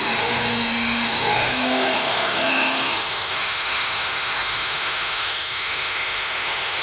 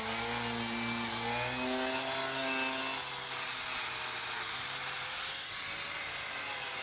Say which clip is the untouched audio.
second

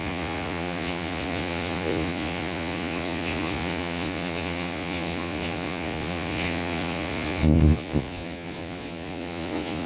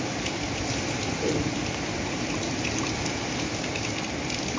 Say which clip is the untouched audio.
second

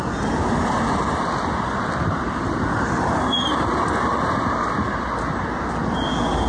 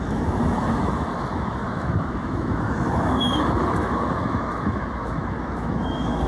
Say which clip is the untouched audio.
first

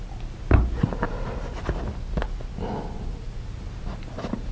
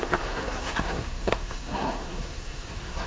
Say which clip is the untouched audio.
first